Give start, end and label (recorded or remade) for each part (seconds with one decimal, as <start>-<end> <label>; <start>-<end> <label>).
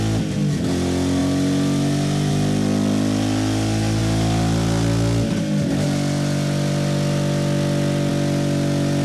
0.0-9.0 recorded